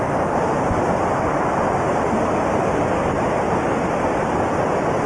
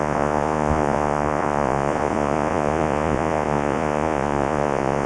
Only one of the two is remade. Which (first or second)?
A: second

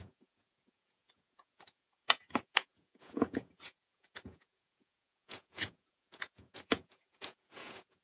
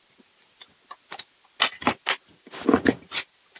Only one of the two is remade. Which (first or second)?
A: first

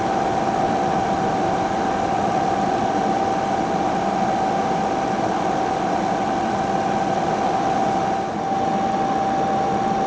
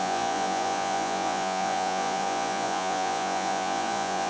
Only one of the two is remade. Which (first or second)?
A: second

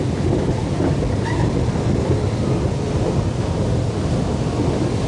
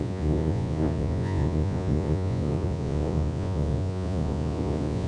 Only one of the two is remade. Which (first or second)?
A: second